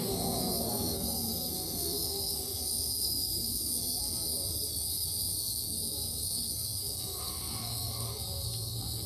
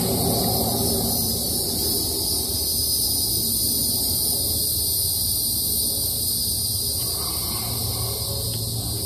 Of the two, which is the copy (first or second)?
first